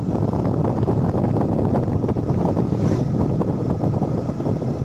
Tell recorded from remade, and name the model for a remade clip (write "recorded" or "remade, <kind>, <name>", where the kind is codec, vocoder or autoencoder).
recorded